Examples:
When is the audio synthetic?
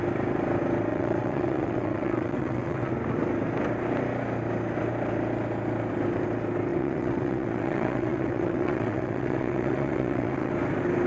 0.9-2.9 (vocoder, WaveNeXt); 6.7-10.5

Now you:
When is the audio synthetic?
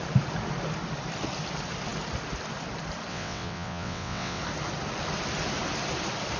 3.1-4.4 (vocoder, WaveNeXt)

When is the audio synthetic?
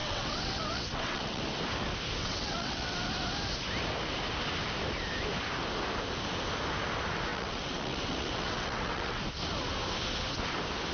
0.0-1.4 (vocoder, WaveNeXt); 2.2-3.0; 7.3-9.2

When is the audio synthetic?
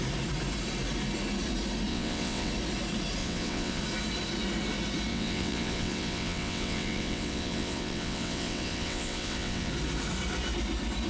1.9-2.5 (vocoder, WaveNeXt); 3.2-3.8; 5.1-9.7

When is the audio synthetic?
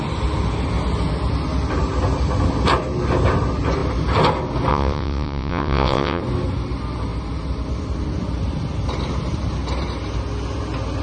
4.7-6.2 (vocoder, WaveNeXt)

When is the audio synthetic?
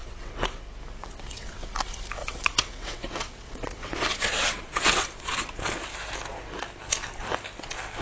0.0-0.6 (vocoder, WaveNeXt); 1.0-1.7; 2.2-5.3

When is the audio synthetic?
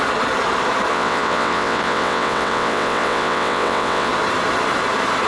0.9-4.1 (vocoder, WaveNeXt)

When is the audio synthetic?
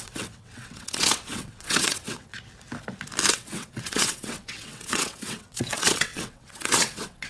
0.0-2.3 (vocoder, WaveNeXt); 3.3-7.3